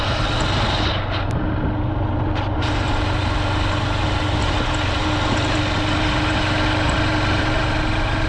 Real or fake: real